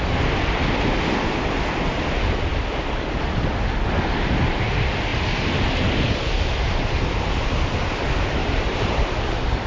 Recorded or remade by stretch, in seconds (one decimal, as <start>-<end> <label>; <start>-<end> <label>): 0.0-8.4 recorded; 8.4-9.2 remade; 9.2-9.7 recorded